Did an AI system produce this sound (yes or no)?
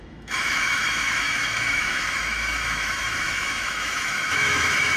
yes